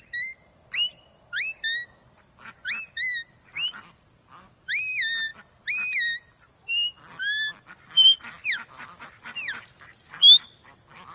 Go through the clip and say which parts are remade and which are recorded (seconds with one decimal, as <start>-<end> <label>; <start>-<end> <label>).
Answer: 0.0-8.4 recorded; 8.4-9.1 remade; 9.1-11.1 recorded